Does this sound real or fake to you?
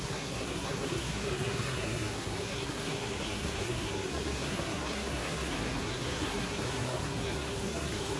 fake